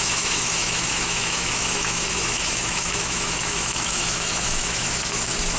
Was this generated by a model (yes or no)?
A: yes